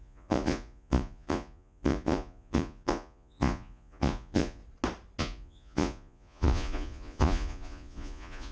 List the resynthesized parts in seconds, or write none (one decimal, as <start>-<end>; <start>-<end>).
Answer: 0.0-4.6; 5.2-8.5